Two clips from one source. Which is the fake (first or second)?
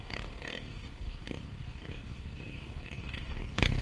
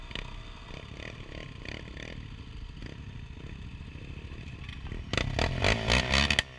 first